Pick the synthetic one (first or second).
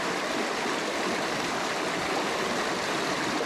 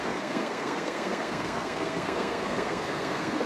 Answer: second